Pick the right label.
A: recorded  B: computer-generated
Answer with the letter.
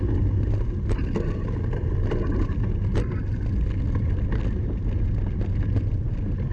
A